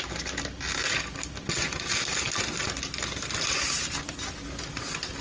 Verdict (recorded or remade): recorded